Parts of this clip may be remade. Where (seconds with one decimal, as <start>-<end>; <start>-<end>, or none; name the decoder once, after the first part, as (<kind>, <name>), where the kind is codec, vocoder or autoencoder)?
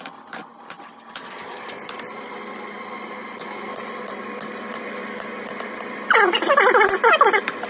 none